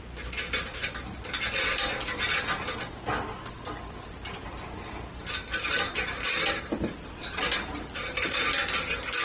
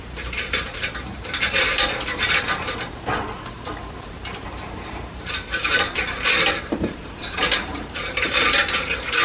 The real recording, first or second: first